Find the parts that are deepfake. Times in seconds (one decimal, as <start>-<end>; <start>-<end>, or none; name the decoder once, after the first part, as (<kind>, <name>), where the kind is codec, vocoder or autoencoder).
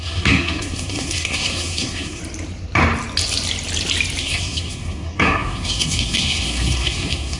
0.0-2.2 (codec, SNAC); 4.2-7.4